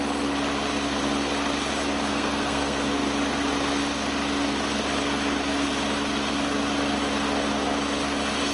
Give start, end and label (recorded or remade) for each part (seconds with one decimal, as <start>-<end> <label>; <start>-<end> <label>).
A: 0.0-2.1 recorded; 2.1-2.8 remade; 2.8-8.5 recorded